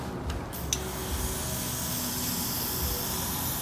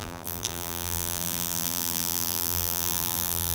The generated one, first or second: second